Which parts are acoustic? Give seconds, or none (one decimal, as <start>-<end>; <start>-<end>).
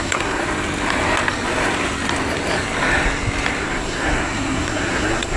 0.4-3.6